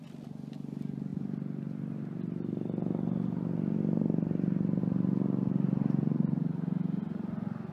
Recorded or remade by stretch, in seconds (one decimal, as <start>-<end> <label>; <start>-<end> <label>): 0.0-7.7 recorded